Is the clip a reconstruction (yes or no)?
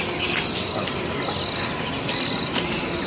no